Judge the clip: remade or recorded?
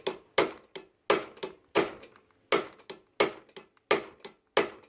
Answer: recorded